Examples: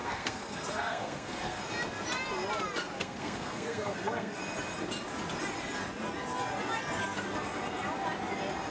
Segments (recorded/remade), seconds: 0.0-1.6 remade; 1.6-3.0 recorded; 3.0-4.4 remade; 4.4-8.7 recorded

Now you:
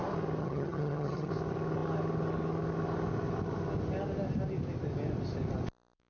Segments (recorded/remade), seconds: 0.0-0.4 recorded; 0.4-1.3 remade; 1.3-6.1 recorded

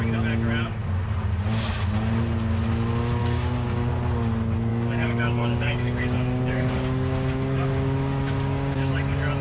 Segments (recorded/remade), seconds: 0.0-3.2 recorded; 3.2-3.9 remade; 3.9-4.7 recorded; 4.7-8.9 remade; 8.9-9.4 recorded

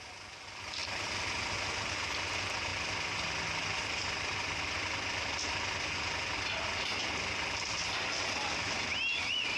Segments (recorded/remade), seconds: 0.0-9.6 recorded